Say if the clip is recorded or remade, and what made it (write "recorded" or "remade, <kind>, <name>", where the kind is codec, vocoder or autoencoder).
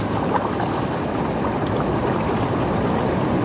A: recorded